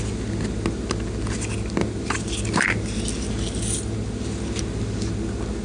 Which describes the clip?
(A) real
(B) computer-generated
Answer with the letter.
A